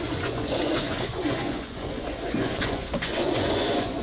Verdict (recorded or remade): remade